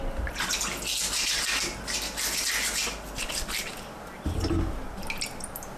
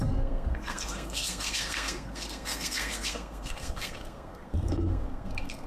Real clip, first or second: first